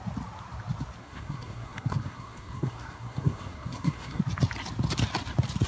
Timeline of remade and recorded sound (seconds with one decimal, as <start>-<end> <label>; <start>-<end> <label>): 0.0-1.0 recorded; 1.0-4.2 remade; 4.2-5.7 recorded